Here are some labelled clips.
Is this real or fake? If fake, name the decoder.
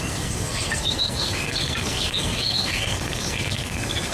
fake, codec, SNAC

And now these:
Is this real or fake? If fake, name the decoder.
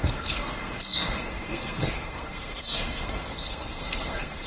fake, codec, SNAC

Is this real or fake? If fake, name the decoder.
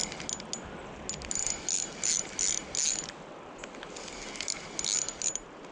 real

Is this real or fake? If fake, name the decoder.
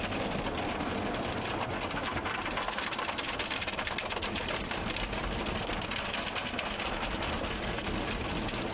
real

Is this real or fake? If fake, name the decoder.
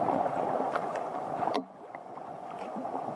fake, vocoder, Vocos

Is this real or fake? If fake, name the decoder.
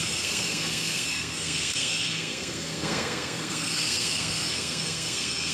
fake, codec, SNAC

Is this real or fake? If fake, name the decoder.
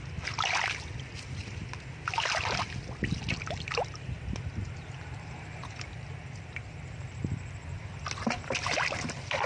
real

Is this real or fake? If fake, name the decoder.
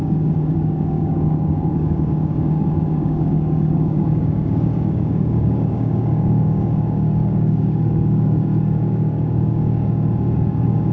fake, codec, DAC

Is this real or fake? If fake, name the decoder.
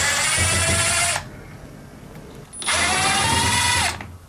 real